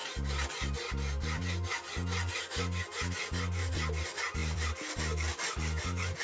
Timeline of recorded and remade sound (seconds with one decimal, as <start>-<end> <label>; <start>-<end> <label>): 0.0-4.4 recorded; 4.4-5.8 remade; 5.8-6.2 recorded